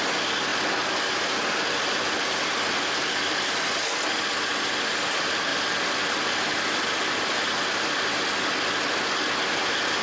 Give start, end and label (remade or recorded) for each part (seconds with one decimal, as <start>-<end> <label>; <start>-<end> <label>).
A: 0.0-0.5 recorded; 0.5-4.3 remade; 4.3-5.5 recorded; 5.5-6.9 remade; 6.9-10.0 recorded